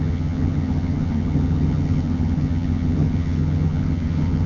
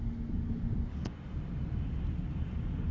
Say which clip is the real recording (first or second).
second